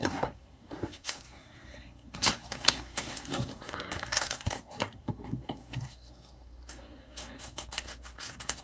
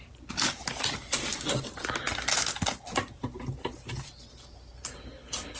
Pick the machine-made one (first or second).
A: first